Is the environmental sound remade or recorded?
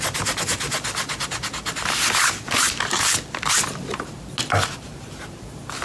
recorded